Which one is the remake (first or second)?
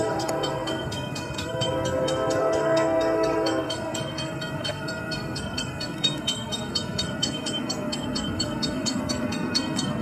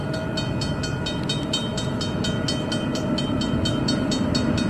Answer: first